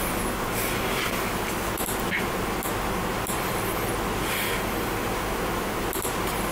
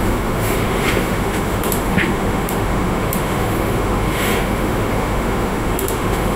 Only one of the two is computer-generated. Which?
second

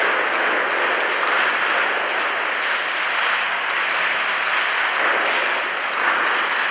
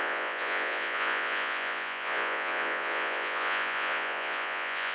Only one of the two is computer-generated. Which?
second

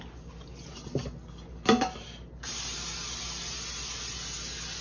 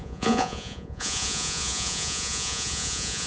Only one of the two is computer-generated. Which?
second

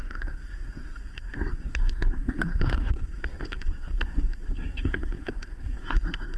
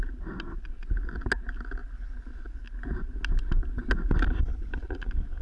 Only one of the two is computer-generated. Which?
first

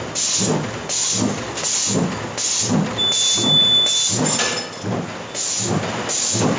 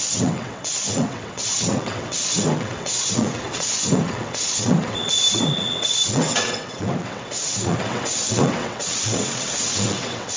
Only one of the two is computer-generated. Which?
second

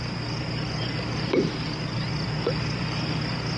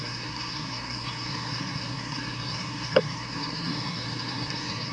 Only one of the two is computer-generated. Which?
second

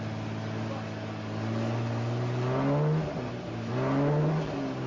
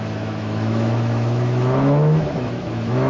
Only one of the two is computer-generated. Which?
second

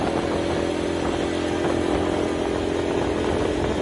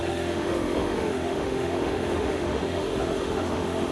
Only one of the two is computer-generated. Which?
second